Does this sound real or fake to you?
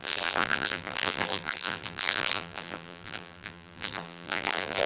fake